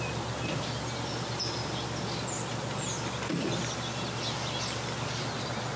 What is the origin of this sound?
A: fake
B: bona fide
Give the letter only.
B